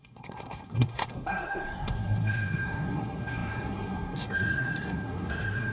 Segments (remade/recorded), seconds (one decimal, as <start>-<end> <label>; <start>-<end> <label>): 0.0-5.7 remade